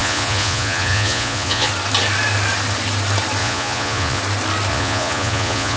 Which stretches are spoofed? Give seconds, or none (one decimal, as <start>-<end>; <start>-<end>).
0.0-1.7; 3.4-4.2; 4.7-5.8

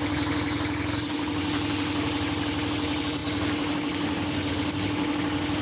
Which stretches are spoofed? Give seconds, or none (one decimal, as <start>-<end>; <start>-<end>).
none

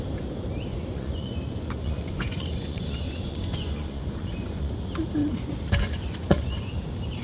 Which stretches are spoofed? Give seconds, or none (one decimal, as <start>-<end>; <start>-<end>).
0.7-4.7; 5.2-6.7

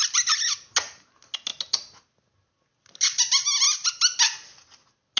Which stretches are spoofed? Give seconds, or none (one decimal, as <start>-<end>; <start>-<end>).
none

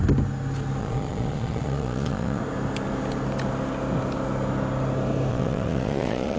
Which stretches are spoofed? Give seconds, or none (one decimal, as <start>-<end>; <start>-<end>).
0.8-2.4; 5.3-6.4